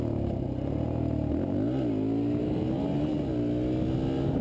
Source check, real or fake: real